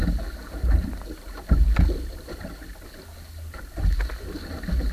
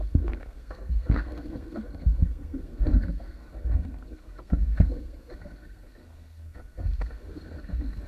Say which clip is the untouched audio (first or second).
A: first